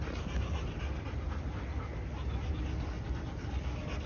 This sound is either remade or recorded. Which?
recorded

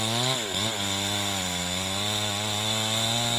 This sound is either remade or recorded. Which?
recorded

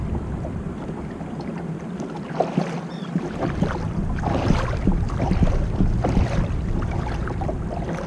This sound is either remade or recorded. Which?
remade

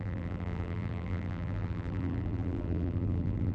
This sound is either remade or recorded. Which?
remade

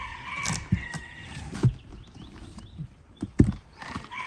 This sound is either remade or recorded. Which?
remade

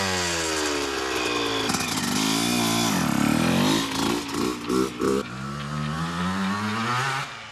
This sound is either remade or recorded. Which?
recorded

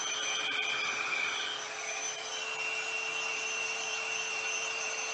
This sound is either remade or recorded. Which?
remade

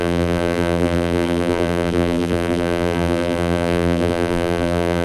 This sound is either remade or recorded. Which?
remade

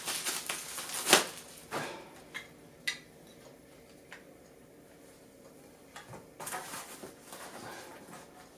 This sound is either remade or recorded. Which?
recorded